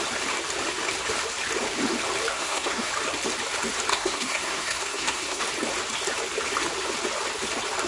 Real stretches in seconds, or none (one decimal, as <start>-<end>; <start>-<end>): 0.0-2.3; 2.9-3.9; 5.4-7.9